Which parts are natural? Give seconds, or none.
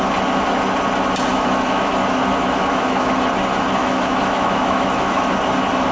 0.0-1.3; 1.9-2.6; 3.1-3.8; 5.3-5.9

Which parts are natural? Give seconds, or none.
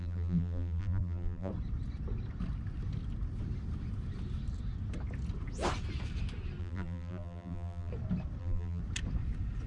1.5-6.6; 7.9-8.4; 8.8-9.7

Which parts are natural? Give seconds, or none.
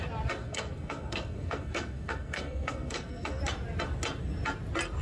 0.0-0.4; 3.4-5.0